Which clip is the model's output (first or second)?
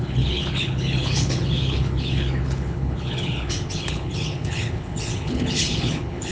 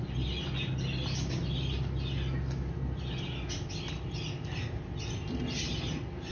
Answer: first